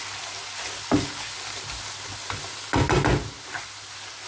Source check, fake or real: real